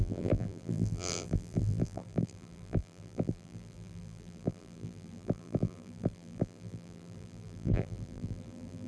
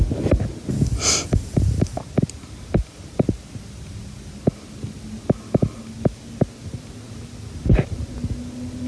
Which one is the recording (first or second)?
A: second